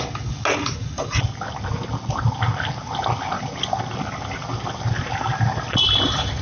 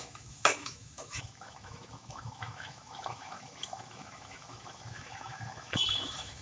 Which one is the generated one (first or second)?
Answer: second